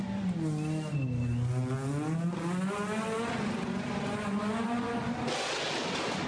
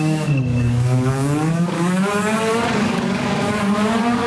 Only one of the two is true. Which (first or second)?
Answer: first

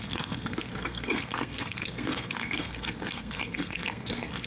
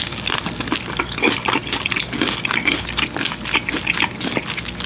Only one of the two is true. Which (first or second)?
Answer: second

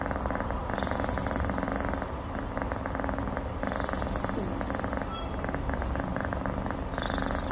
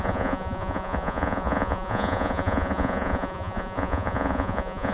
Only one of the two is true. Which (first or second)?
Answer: first